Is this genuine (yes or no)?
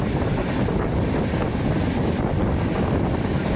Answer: yes